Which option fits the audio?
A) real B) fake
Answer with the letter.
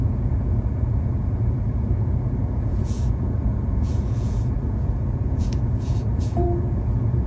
B